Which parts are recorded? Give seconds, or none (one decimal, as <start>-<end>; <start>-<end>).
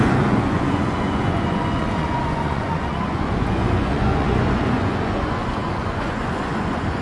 none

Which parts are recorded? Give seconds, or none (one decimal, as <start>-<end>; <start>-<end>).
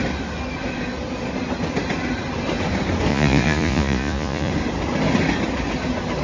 0.0-3.1; 4.5-6.2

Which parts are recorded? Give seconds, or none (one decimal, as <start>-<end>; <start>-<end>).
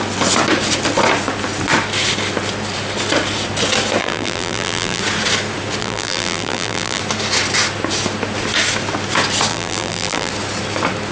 0.0-4.0; 5.0-5.8; 7.0-9.5; 10.3-11.1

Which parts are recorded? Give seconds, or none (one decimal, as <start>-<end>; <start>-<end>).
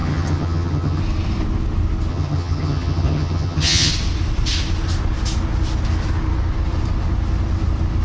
1.0-2.1; 3.9-8.0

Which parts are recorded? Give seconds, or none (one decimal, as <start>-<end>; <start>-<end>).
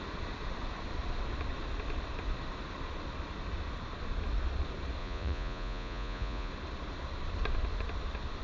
0.0-5.0; 6.5-8.4